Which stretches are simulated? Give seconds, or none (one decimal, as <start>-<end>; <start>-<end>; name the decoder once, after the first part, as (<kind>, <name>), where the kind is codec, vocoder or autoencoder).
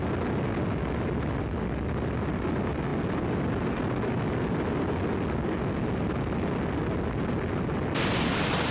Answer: none